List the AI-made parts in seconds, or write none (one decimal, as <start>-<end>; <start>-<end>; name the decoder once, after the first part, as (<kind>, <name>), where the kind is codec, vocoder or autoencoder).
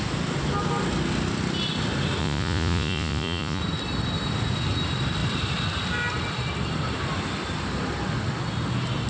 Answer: 2.2-3.6 (vocoder, Vocos)